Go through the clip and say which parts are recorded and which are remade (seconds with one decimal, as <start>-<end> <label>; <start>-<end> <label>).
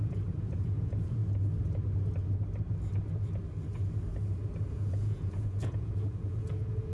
0.0-1.2 remade; 1.2-4.7 recorded; 4.7-6.9 remade